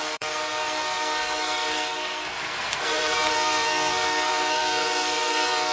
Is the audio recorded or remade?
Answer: remade